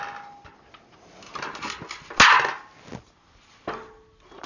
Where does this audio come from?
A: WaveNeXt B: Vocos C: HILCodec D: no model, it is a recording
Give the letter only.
D